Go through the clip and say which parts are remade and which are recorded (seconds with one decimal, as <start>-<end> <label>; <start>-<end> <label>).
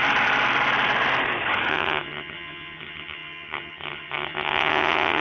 0.0-1.7 recorded; 1.7-5.2 remade